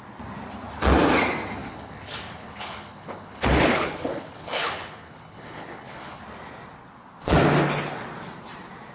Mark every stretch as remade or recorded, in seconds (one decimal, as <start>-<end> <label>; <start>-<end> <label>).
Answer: 0.0-1.6 recorded; 1.6-6.2 remade; 6.2-8.9 recorded